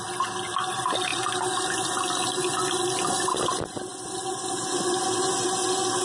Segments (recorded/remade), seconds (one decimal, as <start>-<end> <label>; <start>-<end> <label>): 0.0-6.0 recorded